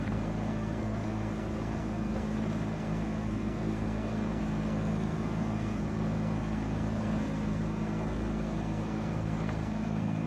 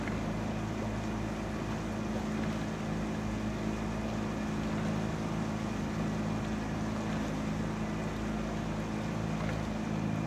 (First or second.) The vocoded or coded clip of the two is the first